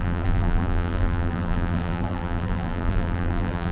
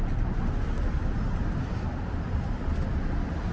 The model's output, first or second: first